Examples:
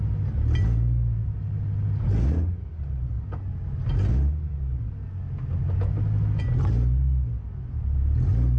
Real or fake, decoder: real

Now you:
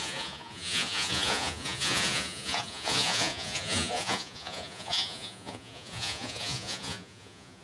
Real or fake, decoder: fake, vocoder, Vocos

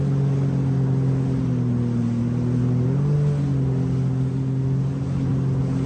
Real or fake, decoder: real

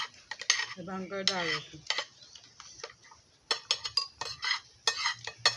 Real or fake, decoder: real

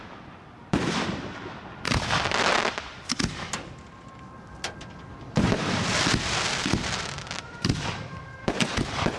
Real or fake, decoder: fake, vocoder, BigVGAN v2